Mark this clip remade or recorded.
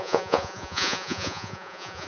remade